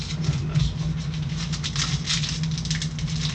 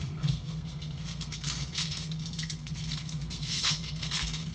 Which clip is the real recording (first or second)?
first